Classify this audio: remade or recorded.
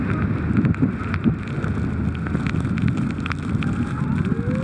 recorded